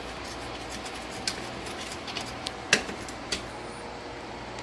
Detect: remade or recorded recorded